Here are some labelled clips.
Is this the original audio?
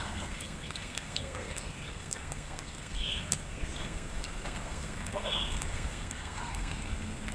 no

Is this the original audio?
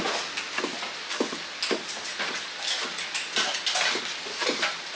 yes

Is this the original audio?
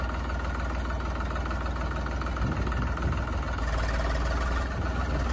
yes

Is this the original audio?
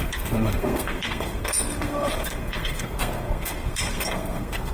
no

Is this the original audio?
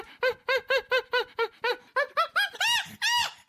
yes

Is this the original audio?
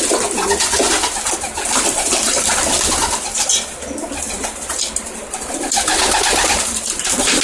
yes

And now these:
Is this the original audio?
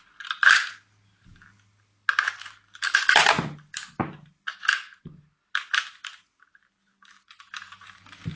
yes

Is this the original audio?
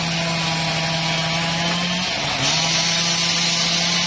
yes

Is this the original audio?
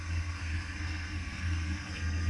no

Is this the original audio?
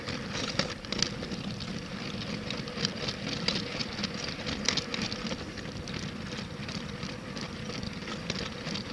yes